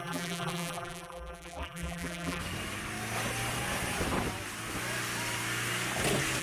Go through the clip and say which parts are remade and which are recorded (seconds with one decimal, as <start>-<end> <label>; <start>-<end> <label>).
0.0-2.4 remade; 2.4-6.4 recorded